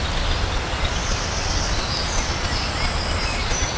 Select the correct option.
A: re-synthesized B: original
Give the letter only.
B